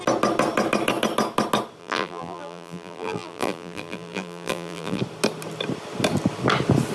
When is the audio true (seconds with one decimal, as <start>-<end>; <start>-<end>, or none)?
0.0-1.8; 5.0-6.9